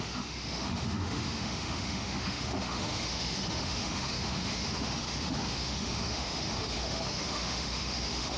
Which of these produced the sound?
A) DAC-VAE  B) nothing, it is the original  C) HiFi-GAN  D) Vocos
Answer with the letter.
A